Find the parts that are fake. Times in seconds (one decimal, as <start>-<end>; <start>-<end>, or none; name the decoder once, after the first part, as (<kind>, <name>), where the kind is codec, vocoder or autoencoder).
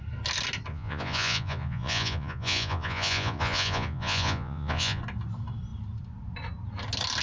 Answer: 0.7-5.0 (vocoder, Vocos)